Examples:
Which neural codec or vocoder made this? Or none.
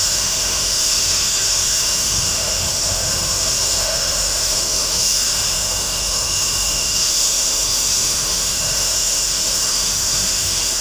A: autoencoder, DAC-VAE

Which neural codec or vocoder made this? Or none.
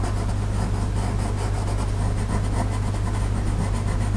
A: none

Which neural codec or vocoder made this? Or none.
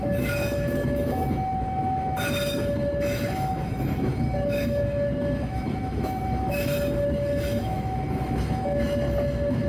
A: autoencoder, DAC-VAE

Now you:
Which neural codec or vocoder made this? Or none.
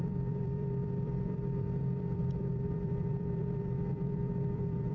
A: vocoder, BigVGAN v2